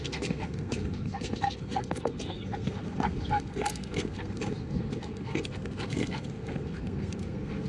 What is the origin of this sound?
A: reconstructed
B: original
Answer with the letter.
A